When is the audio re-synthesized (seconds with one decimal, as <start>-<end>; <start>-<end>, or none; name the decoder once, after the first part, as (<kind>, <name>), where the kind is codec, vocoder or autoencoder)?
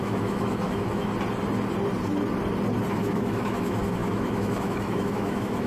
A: 0.0-1.1 (autoencoder, DAC-VAE); 2.9-5.7